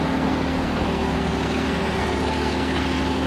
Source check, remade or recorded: remade